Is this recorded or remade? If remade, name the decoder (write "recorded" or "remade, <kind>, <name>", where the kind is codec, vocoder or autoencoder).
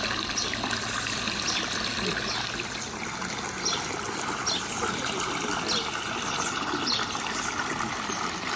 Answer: recorded